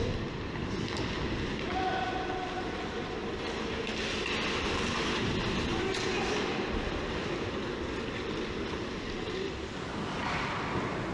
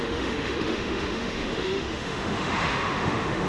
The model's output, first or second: second